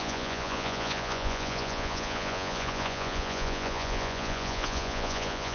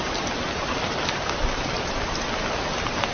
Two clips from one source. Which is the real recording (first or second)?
second